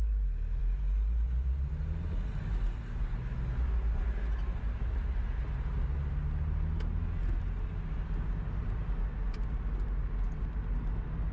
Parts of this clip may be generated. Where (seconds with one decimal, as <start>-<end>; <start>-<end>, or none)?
none